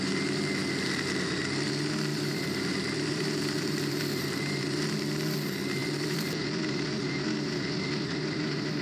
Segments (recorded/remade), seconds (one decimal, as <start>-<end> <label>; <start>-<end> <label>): 0.0-2.1 recorded; 2.1-4.8 remade; 4.8-5.8 recorded; 5.8-7.0 remade; 7.0-8.8 recorded

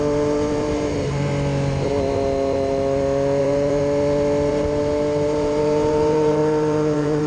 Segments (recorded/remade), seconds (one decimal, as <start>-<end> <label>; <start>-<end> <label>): 0.0-1.3 remade; 1.3-3.4 recorded; 3.4-3.8 remade; 3.8-4.5 recorded; 4.5-7.3 remade

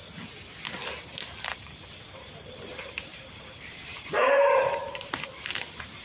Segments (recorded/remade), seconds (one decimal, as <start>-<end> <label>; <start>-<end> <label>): 0.0-1.5 recorded; 1.5-5.1 remade; 5.1-6.0 recorded

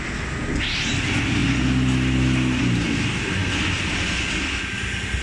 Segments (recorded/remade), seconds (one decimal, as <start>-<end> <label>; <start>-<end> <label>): 0.0-5.2 recorded

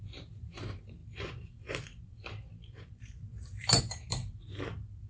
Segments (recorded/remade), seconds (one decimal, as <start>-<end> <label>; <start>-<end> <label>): 0.0-5.1 remade

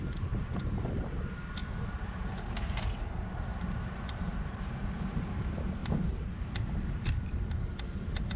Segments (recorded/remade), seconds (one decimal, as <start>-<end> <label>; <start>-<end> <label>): 0.0-1.6 recorded; 1.6-5.2 remade; 5.2-5.8 recorded; 5.8-6.7 remade; 6.7-8.4 recorded

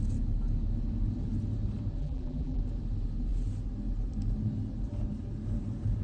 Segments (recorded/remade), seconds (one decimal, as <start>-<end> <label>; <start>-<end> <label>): 0.0-2.0 recorded; 2.0-2.6 remade; 2.6-6.0 recorded

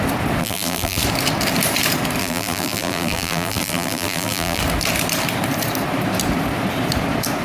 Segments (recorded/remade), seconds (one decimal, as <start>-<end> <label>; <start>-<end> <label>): 0.0-0.4 recorded; 0.4-1.0 remade; 1.0-2.2 recorded; 2.2-4.6 remade; 4.6-7.4 recorded